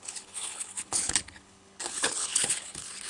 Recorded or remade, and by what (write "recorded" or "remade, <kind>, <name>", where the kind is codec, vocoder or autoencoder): remade, codec, HILCodec